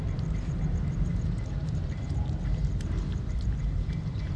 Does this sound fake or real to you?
fake